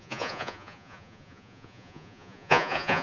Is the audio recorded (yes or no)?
no